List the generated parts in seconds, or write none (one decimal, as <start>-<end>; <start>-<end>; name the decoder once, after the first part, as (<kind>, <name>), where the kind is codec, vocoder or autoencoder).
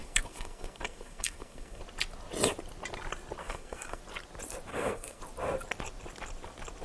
0.0-1.8 (codec, SNAC); 3.4-4.0; 4.7-5.2